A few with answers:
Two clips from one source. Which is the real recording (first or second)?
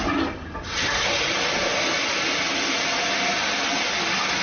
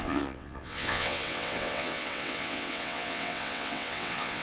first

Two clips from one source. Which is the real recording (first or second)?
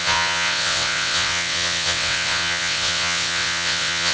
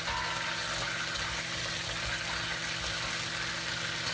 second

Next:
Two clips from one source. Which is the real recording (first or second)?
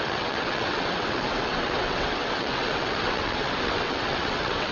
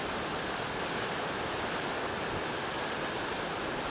second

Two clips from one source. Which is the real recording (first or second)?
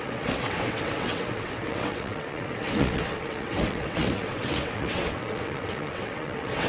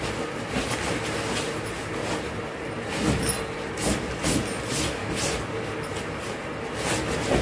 second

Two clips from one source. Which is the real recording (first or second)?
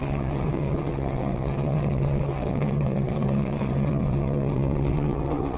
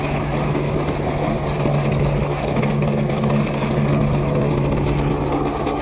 second